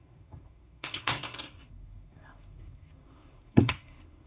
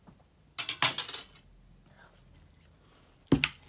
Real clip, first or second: second